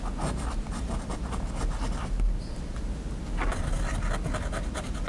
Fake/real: real